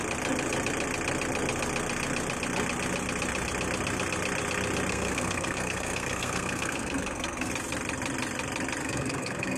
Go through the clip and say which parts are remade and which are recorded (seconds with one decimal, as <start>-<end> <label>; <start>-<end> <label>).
0.0-4.9 recorded; 4.9-7.5 remade; 7.5-8.8 recorded; 8.8-9.6 remade